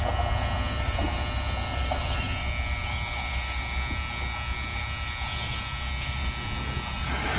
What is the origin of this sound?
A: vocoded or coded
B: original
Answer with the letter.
B